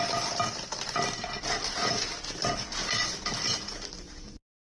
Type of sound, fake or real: real